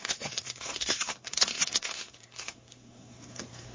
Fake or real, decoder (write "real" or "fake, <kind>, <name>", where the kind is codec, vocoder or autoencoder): fake, codec, SNAC